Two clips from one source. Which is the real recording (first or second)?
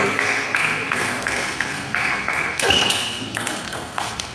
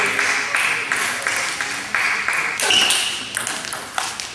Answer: second